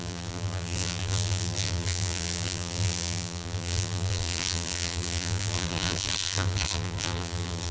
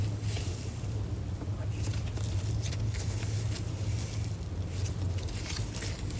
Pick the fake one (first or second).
first